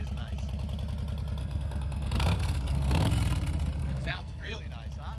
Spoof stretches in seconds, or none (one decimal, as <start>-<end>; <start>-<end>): 1.4-3.1; 3.8-4.6

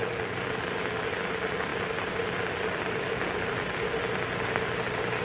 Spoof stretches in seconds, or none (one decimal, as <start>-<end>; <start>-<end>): none

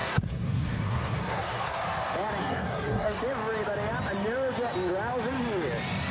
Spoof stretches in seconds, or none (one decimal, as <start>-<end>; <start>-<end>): 0.0-1.8; 2.4-3.2